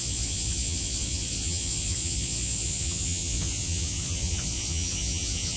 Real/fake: fake